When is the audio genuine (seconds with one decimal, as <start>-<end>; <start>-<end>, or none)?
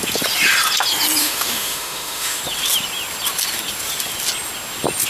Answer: 0.0-1.2; 2.4-5.1